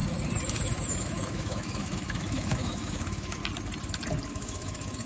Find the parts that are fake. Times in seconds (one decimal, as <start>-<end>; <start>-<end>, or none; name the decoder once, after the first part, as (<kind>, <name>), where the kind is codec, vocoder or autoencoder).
0.5-3.4 (autoencoder, DAC-VAE); 4.3-5.1